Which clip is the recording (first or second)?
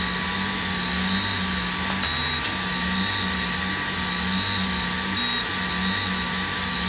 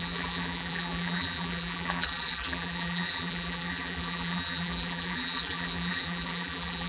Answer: first